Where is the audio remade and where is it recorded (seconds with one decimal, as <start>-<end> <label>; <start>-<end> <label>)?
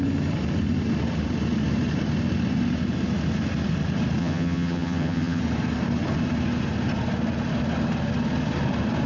0.0-4.2 recorded; 4.2-5.4 remade; 5.4-9.1 recorded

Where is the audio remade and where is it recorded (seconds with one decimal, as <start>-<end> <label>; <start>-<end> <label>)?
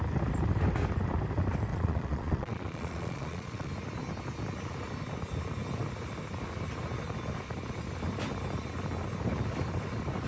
0.0-1.7 recorded; 1.7-3.7 remade; 3.7-10.3 recorded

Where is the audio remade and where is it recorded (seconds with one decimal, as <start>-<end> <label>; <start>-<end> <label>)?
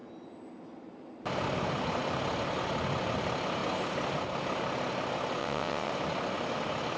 0.0-5.4 recorded; 5.4-5.9 remade; 5.9-7.0 recorded